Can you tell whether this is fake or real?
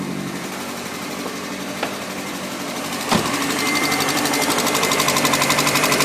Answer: fake